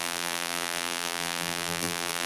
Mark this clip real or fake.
fake